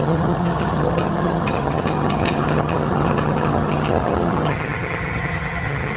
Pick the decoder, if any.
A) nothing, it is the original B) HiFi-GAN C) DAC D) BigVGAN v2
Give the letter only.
B